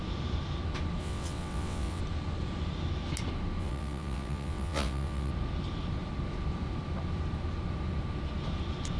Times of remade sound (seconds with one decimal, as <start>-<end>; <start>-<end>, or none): 1.0-2.0; 3.6-5.3